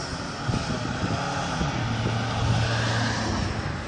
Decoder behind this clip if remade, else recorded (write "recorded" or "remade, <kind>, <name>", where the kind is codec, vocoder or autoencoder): recorded